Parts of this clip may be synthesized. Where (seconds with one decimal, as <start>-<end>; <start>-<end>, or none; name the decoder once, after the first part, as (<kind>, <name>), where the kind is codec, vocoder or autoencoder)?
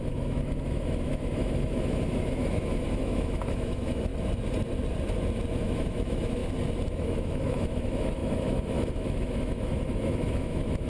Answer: 0.0-4.1 (autoencoder, DAC-VAE); 5.5-6.4; 6.9-10.9